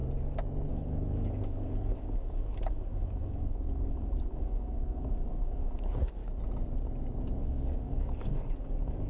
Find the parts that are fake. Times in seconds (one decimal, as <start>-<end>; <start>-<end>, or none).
0.7-6.2; 7.4-9.1